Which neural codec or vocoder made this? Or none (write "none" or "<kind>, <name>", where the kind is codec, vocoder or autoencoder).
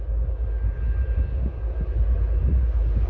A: none